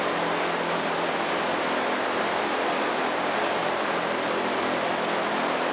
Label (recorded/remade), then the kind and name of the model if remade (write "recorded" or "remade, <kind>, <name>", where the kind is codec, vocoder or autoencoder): recorded